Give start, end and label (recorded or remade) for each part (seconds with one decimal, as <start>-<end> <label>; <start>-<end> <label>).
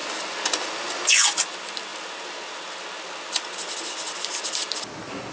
0.0-5.3 recorded